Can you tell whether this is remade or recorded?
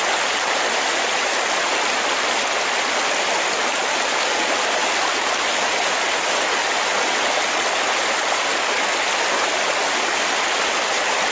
recorded